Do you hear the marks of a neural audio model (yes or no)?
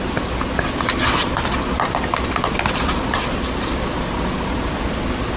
no